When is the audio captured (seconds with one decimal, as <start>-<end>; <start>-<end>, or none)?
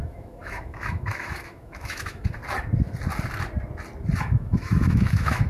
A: 2.4-4.2